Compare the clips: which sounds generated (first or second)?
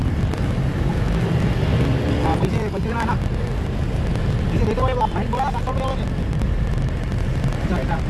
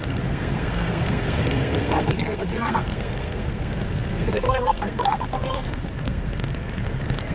second